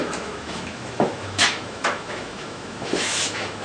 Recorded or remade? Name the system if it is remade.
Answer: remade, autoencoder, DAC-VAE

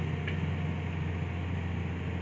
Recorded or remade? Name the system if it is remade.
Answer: recorded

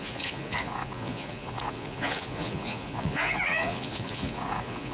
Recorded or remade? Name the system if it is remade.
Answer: remade, vocoder, Vocos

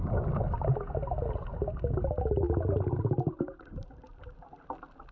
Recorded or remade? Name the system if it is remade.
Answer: recorded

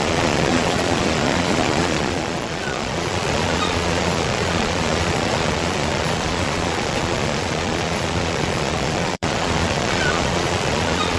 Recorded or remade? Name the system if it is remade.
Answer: remade, vocoder, Vocos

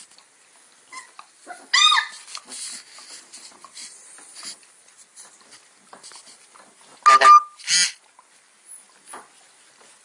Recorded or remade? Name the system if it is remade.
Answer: recorded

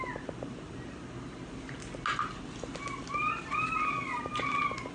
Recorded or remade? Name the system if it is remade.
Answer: recorded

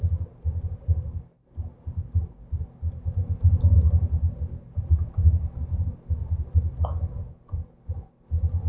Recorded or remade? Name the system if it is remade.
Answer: recorded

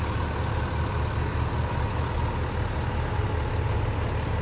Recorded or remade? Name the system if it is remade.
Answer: recorded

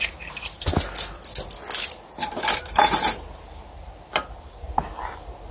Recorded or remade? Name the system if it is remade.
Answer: recorded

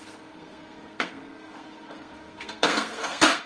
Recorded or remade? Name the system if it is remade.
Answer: remade, codec, SNAC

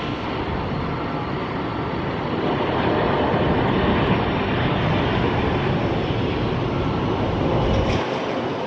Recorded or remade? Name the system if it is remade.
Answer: recorded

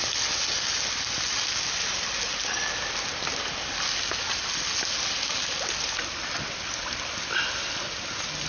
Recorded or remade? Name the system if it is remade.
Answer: recorded